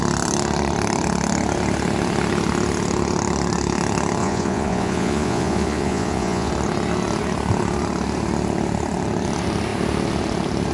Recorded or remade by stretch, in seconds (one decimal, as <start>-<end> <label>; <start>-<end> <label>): 0.0-4.2 recorded; 4.2-6.5 remade; 6.5-10.7 recorded